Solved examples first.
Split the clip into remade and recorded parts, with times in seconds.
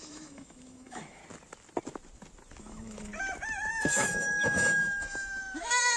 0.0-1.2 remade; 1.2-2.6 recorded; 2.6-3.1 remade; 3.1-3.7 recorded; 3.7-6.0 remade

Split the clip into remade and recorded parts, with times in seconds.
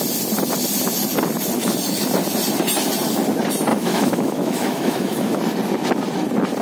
0.0-3.7 recorded; 3.7-5.4 remade; 5.4-6.6 recorded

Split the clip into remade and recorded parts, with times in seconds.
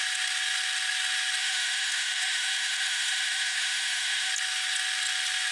0.0-1.4 recorded; 1.4-4.3 remade; 4.3-5.5 recorded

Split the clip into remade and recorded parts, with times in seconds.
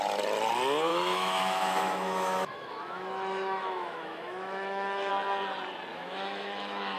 0.0-0.9 recorded; 0.9-5.1 remade; 5.1-5.9 recorded; 5.9-7.0 remade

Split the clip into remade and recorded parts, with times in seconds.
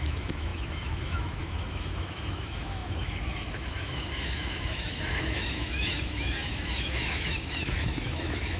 0.0-8.6 remade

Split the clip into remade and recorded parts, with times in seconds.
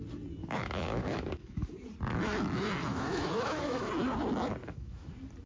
0.0-0.4 recorded; 0.4-1.7 remade; 1.7-2.9 recorded; 2.9-3.9 remade; 3.9-4.6 recorded; 4.6-5.1 remade; 5.1-5.5 recorded